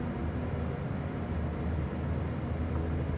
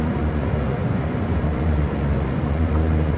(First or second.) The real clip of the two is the first